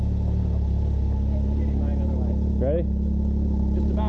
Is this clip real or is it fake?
real